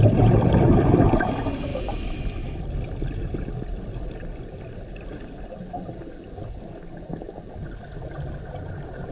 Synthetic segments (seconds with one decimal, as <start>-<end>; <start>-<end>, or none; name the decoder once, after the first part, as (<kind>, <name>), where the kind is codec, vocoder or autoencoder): 1.7-2.2 (autoencoder, DAC-VAE)

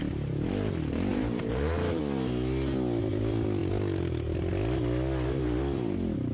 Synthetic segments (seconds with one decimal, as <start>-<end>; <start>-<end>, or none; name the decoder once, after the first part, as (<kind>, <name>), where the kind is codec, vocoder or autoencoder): 1.1-2.0 (vocoder, BigVGAN v2)

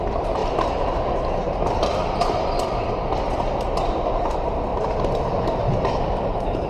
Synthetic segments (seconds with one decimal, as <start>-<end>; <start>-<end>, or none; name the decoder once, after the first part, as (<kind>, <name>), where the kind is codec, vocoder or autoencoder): none

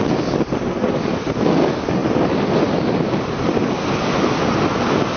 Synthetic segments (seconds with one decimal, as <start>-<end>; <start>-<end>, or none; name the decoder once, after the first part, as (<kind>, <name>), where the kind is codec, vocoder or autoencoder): none

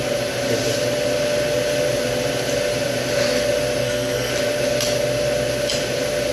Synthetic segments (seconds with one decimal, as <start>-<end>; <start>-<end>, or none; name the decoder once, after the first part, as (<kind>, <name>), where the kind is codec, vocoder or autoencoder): 3.8-4.3 (codec, SNAC)

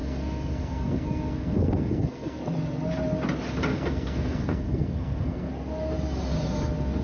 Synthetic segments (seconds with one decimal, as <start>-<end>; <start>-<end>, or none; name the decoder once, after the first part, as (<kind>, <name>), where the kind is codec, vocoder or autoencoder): 0.0-2.4 (codec, SNAC); 3.7-5.5